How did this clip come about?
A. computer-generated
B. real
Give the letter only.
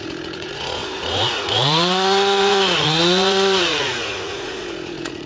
A